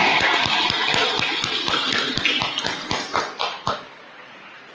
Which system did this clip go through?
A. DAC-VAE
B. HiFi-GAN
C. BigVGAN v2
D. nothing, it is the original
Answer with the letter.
D